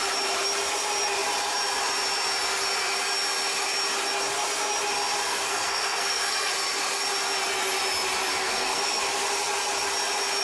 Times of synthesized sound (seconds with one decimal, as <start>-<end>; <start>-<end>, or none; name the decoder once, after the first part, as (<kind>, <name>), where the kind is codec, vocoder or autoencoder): 5.3-6.5 (codec, SNAC); 8.3-9.0